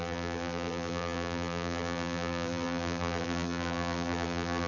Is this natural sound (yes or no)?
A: no